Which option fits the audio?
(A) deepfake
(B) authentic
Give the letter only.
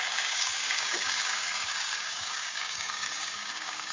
A